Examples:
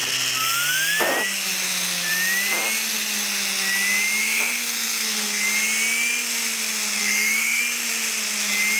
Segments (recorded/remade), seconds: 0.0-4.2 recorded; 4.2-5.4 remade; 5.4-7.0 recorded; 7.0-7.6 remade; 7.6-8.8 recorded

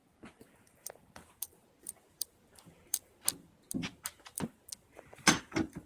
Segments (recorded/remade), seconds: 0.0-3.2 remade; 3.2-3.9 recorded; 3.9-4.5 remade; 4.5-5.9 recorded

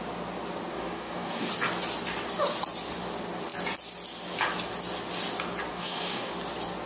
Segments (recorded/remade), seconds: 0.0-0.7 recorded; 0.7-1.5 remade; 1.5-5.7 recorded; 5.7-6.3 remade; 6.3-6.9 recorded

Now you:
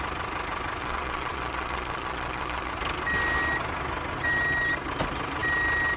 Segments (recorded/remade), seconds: 0.0-0.8 recorded; 0.8-2.7 remade; 2.7-6.0 recorded

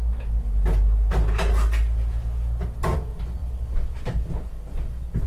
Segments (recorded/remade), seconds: 0.0-5.3 recorded

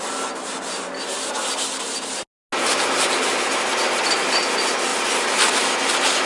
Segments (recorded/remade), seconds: 0.0-6.3 recorded

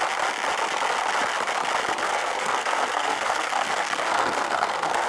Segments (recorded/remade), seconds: 0.0-2.0 recorded; 2.0-5.1 remade